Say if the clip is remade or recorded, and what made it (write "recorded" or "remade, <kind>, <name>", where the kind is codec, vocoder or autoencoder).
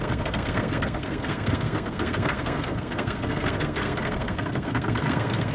remade, codec, SNAC